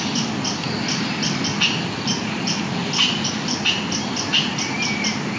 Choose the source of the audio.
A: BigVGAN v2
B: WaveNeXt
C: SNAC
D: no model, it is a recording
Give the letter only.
D